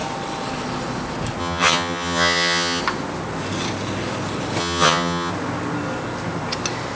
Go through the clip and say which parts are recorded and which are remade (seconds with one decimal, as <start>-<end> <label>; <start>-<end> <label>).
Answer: 0.0-1.4 recorded; 1.4-2.8 remade; 2.8-4.6 recorded; 4.6-5.3 remade; 5.3-7.0 recorded